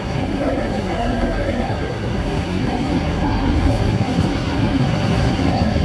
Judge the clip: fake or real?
fake